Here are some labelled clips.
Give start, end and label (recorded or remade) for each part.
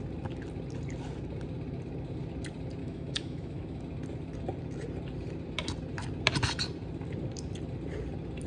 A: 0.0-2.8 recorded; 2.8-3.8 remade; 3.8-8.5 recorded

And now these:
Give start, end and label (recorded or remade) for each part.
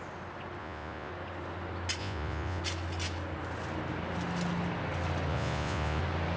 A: 0.0-0.6 recorded; 0.6-1.1 remade; 1.1-2.0 recorded; 2.0-2.6 remade; 2.6-5.3 recorded; 5.3-6.0 remade; 6.0-6.4 recorded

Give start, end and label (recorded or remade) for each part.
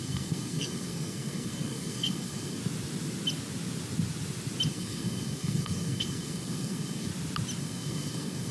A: 0.0-2.6 remade; 2.6-4.7 recorded; 4.7-7.1 remade; 7.1-7.6 recorded; 7.6-8.5 remade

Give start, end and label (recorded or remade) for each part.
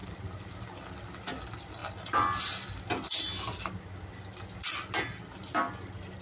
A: 0.0-6.2 recorded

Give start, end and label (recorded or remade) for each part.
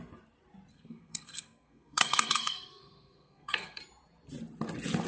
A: 0.0-0.7 recorded; 0.7-3.8 remade; 3.8-5.1 recorded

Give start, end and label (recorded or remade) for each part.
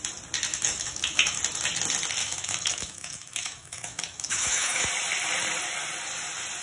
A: 0.0-0.5 recorded; 0.5-1.4 remade; 1.4-2.2 recorded; 2.2-4.9 remade; 4.9-6.6 recorded